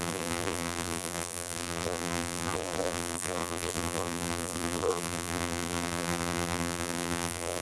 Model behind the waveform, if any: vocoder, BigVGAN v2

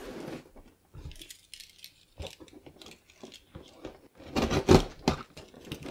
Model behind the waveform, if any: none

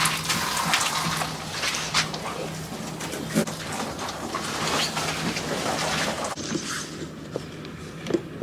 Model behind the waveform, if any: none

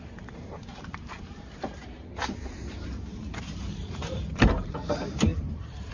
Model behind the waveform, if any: vocoder, BigVGAN v2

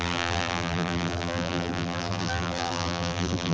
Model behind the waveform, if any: vocoder, BigVGAN v2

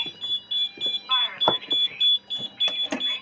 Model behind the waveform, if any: none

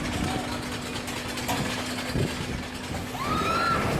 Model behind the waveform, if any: none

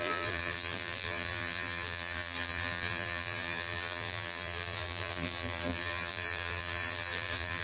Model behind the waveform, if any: vocoder, BigVGAN v2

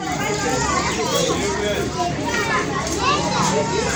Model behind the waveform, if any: vocoder, BigVGAN v2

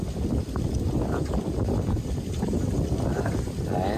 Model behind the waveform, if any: none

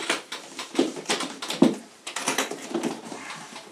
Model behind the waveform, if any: vocoder, BigVGAN v2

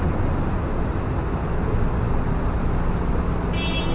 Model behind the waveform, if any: none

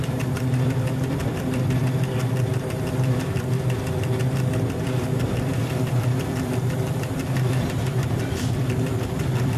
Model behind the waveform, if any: vocoder, BigVGAN v2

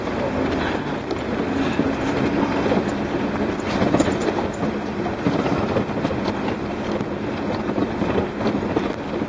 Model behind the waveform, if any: vocoder, BigVGAN v2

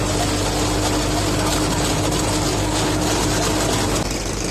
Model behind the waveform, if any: none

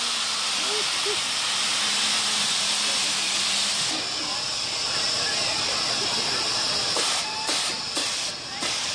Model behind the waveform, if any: none